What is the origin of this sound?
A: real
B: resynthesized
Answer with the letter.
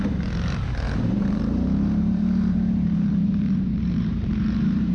B